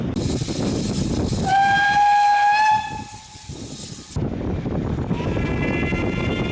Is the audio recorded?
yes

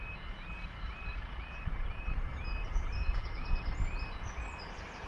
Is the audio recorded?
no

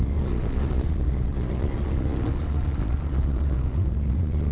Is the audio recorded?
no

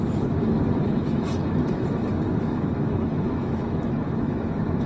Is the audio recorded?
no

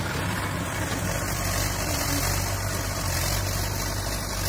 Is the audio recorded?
no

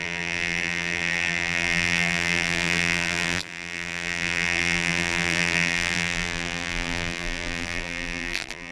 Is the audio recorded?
no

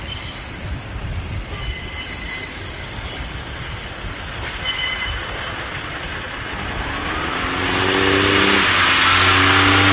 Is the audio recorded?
yes